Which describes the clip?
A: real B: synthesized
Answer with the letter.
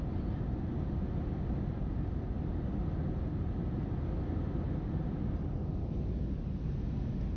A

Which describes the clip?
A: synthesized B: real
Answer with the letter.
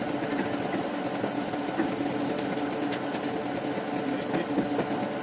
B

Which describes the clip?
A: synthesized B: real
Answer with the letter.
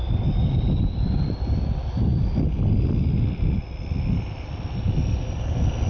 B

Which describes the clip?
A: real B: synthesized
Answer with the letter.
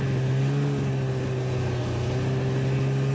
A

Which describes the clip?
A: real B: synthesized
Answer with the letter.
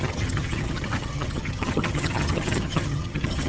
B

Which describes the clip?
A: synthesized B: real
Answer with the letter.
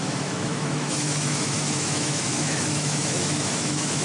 A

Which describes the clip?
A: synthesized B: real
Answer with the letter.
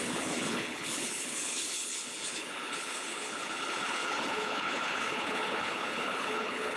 A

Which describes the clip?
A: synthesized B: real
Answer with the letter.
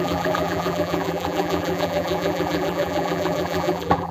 A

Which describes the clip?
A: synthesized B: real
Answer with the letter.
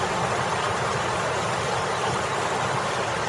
B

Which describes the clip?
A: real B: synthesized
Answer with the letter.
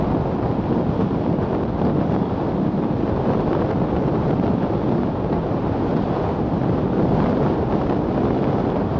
A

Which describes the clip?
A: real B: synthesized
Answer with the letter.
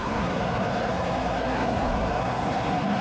B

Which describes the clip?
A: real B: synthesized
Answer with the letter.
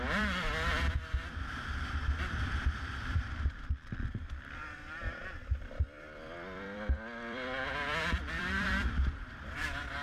B